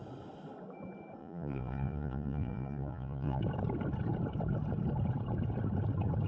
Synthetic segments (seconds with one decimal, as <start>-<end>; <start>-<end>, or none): 1.2-3.4